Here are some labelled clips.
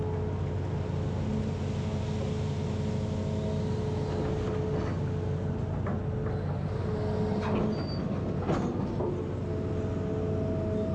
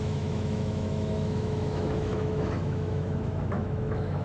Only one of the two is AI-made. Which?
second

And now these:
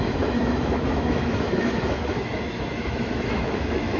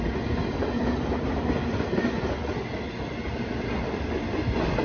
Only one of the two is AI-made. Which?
first